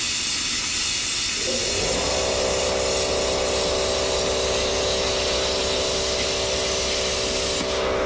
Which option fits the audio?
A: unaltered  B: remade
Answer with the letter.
A